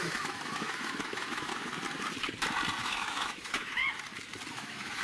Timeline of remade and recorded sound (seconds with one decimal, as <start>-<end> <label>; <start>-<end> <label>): 0.0-1.5 remade; 1.5-2.8 recorded; 2.8-3.8 remade; 3.8-4.5 recorded; 4.5-5.0 remade